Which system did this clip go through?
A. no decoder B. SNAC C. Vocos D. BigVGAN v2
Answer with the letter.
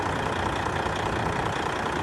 A